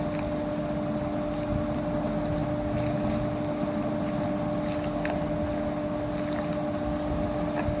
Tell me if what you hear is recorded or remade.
recorded